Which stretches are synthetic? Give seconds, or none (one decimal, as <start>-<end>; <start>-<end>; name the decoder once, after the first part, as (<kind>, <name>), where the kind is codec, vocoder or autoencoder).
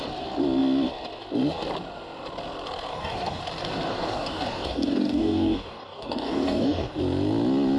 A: 2.9-3.4 (codec, DAC); 3.9-7.0